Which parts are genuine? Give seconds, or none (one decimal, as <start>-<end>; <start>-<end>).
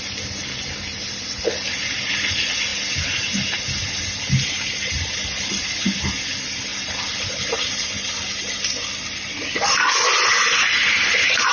0.0-11.5